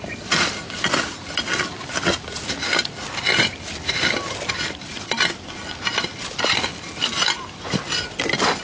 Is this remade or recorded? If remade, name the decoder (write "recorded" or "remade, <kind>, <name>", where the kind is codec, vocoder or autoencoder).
recorded